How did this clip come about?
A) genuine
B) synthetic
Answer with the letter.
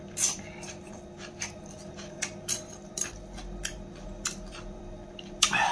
B